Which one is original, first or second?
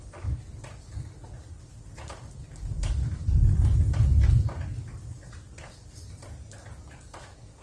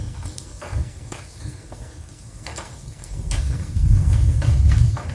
first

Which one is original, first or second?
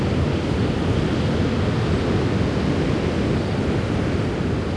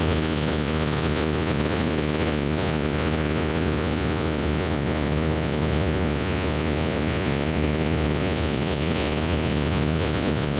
first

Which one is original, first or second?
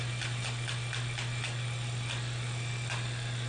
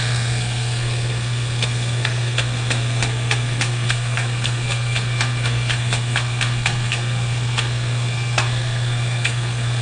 first